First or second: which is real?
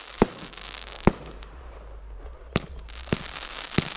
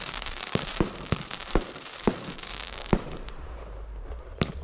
first